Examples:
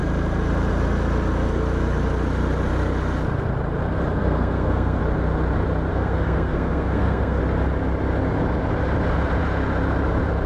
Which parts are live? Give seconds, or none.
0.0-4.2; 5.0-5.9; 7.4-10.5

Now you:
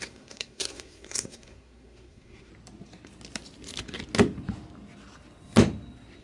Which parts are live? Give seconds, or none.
2.5-6.2

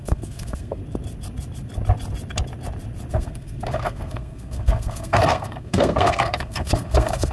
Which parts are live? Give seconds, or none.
0.8-3.1

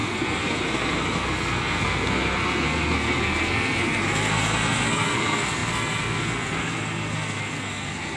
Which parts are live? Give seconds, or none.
none

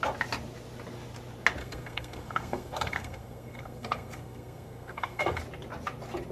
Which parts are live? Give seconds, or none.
0.0-1.6; 5.4-6.3

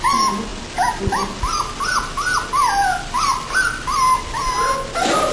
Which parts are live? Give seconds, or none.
0.0-5.3

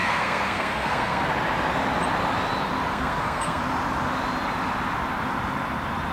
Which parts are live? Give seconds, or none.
1.3-2.9; 3.6-6.1